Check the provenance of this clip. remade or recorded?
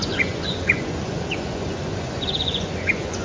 remade